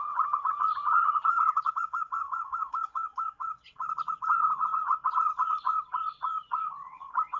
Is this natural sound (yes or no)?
no